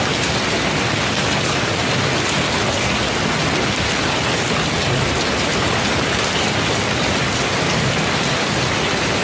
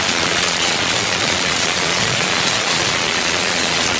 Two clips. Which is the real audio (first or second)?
first